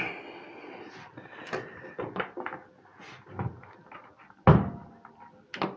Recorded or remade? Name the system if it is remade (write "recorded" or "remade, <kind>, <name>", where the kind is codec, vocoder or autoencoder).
recorded